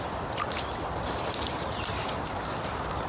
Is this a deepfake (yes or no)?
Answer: yes